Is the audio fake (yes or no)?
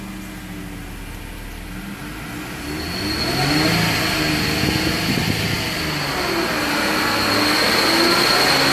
no